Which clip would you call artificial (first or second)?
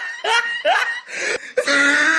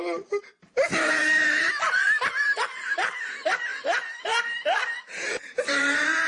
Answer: second